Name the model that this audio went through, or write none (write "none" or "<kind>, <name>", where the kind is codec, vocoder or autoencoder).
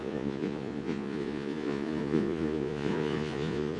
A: vocoder, Vocos